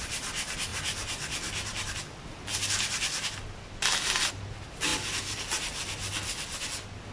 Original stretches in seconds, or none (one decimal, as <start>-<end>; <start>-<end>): 0.0-7.1